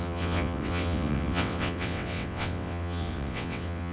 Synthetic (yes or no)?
yes